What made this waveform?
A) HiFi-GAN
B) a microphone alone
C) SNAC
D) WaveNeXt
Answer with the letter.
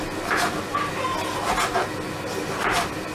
B